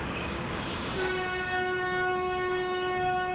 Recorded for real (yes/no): no